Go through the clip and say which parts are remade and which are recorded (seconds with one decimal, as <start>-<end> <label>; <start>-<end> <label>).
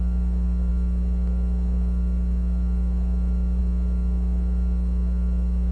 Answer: 0.0-5.7 recorded